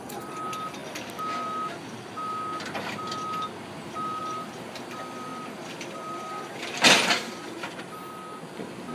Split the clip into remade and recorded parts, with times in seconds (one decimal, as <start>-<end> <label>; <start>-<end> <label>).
0.0-8.9 recorded